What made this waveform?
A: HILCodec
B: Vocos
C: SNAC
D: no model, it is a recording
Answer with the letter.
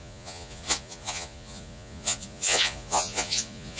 B